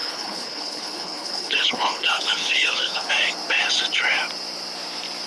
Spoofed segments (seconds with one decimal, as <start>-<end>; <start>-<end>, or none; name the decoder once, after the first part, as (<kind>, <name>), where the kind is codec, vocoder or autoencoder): 0.0-3.1 (codec, HILCodec)